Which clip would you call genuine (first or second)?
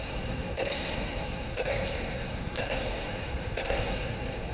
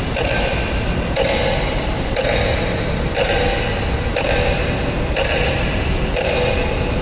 second